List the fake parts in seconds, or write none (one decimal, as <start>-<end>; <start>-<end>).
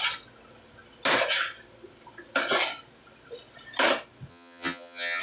4.3-5.2